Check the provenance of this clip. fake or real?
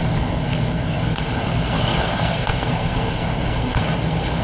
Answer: fake